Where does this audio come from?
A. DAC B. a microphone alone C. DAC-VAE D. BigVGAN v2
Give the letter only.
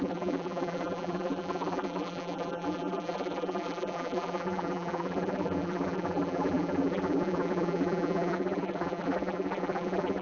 D